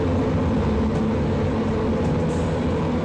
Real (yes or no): yes